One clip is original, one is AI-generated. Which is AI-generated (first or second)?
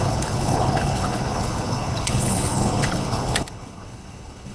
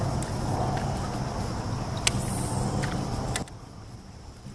first